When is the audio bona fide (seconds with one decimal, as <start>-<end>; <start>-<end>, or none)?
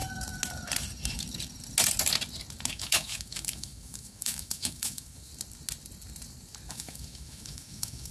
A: 0.0-2.7; 5.3-6.7